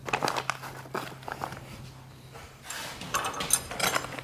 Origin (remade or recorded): recorded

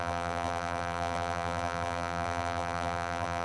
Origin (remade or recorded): remade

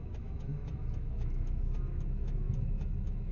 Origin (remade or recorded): remade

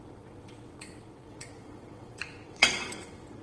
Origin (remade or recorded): remade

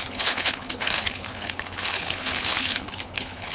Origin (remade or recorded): remade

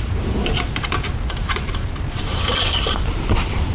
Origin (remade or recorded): remade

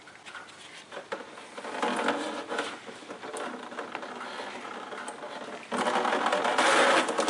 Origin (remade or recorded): recorded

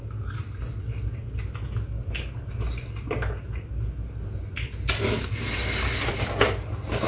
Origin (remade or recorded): recorded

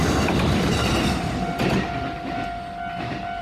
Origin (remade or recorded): recorded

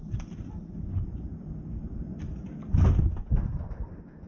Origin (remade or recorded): recorded